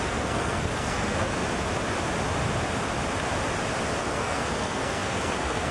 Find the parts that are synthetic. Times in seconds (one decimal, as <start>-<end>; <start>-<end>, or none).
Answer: 0.0-1.4; 4.0-5.7